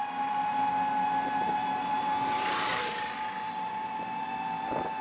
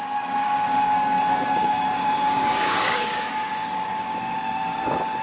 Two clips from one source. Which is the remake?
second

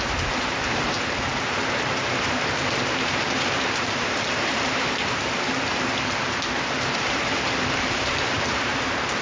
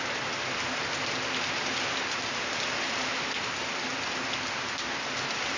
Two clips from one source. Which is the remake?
first